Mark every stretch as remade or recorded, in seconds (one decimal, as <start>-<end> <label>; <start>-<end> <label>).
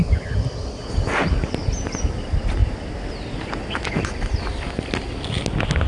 0.0-5.9 recorded